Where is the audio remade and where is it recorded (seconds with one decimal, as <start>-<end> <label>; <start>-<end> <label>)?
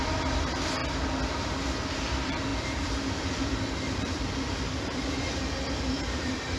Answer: 0.0-0.8 remade; 0.8-2.0 recorded; 2.0-6.6 remade